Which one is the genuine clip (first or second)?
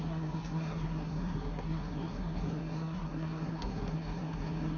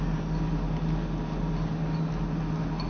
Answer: second